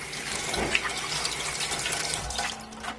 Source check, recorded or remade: recorded